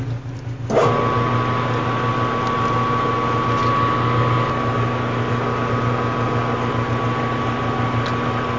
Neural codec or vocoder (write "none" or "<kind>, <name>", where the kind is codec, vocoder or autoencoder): none